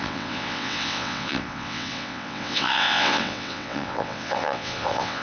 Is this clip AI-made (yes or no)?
yes